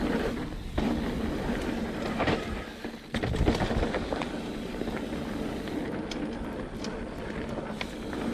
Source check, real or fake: real